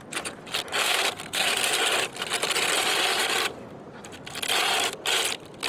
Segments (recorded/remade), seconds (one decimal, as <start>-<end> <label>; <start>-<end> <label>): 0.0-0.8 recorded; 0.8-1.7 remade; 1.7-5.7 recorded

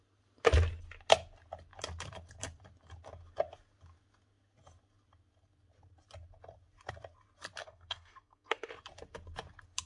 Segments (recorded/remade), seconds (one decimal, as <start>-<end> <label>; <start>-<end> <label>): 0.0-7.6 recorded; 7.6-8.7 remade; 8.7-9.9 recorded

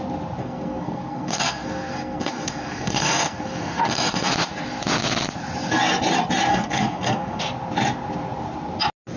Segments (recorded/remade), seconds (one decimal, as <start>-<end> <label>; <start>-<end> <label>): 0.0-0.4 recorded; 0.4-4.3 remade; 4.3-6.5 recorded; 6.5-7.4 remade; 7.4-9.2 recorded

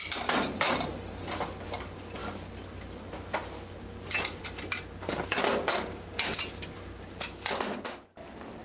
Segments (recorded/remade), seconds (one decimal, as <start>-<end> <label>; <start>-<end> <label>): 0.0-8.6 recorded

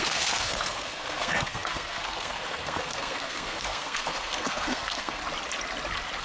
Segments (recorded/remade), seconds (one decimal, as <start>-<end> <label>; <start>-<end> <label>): 0.0-5.2 remade; 5.2-6.2 recorded

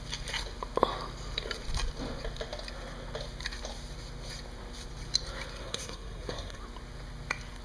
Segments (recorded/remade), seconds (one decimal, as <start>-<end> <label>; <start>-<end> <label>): 0.0-5.6 recorded; 5.6-6.6 remade; 6.6-7.6 recorded

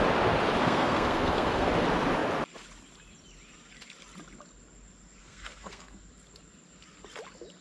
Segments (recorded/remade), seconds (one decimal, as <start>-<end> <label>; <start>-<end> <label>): 0.0-0.6 recorded; 0.6-1.7 remade; 1.7-5.2 recorded; 5.2-6.0 remade; 6.0-7.6 recorded